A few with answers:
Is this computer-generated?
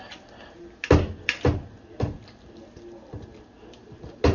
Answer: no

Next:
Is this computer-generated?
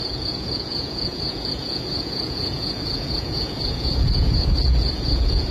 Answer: yes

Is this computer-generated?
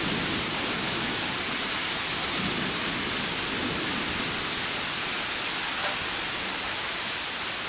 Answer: no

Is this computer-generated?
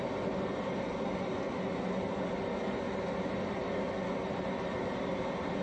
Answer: no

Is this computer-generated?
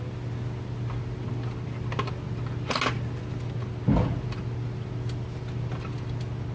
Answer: no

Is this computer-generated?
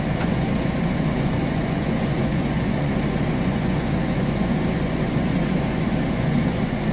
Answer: yes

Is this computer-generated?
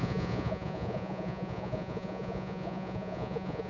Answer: yes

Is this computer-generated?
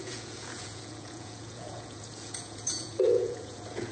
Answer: yes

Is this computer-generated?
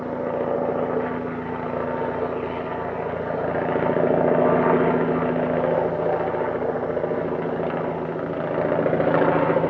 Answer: no